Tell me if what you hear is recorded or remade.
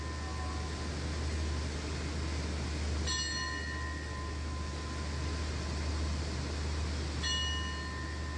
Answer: recorded